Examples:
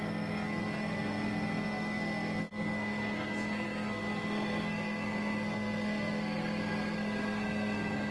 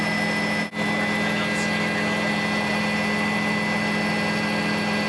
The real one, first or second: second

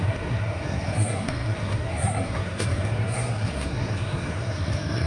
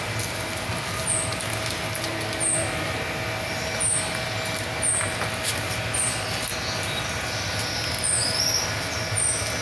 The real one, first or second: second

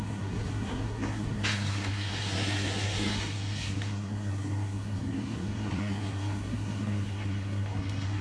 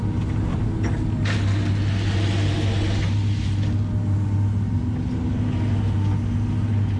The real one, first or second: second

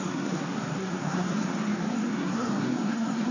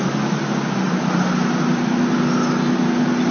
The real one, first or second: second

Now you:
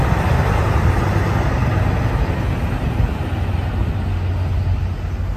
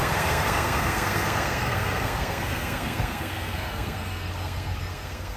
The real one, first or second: first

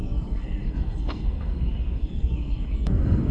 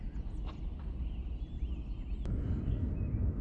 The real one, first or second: second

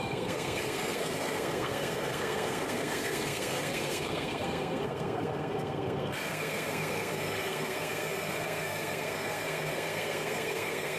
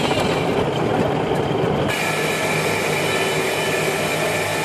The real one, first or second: second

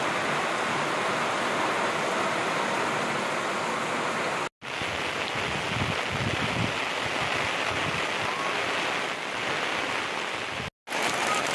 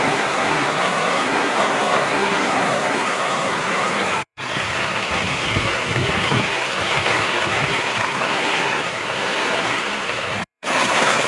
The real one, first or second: first